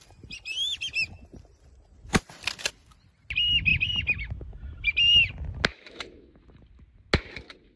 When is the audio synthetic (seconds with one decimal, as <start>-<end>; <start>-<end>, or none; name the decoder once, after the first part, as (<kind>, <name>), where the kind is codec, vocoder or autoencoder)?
5.7-6.4 (autoencoder, DAC-VAE)